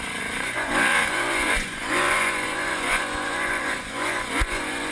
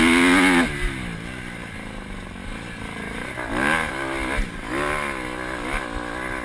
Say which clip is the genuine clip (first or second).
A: second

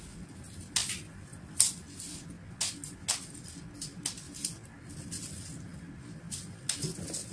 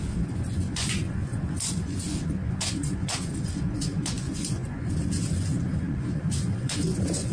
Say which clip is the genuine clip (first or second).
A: first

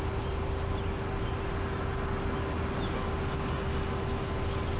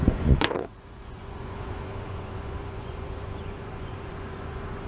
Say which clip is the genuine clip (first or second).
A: first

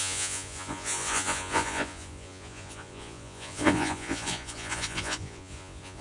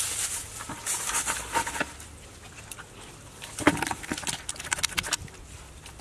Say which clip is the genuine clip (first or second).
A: second